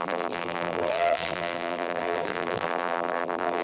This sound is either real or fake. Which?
fake